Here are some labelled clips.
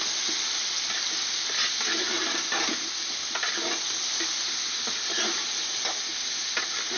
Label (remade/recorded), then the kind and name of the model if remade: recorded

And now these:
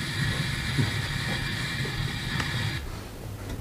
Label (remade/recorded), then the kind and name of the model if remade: recorded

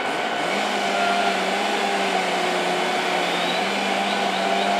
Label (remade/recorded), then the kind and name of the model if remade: recorded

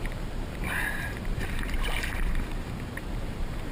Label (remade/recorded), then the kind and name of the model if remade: remade, vocoder, BigVGAN v2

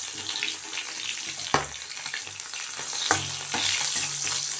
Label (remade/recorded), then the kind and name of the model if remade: recorded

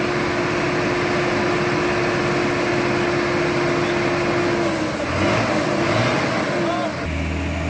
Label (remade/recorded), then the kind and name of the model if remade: recorded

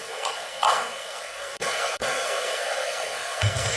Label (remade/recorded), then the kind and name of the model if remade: remade, codec, SNAC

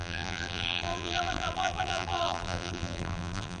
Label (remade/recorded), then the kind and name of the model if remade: remade, vocoder, BigVGAN v2